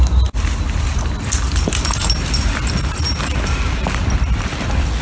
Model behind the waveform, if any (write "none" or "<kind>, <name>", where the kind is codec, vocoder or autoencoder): none